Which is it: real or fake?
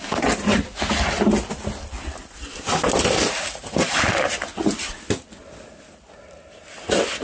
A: real